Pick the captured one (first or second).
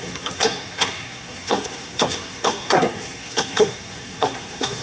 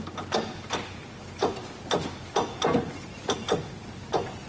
second